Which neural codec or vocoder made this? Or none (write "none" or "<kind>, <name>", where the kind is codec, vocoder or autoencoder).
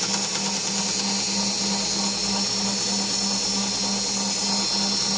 none